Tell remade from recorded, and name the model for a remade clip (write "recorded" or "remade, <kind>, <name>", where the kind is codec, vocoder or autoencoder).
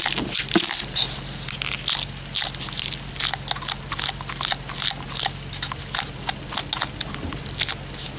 recorded